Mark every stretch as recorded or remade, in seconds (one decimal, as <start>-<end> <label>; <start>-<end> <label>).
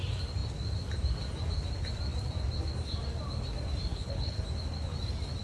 0.0-3.9 recorded; 3.9-4.4 remade; 4.4-5.4 recorded